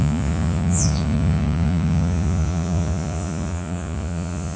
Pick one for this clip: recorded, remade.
remade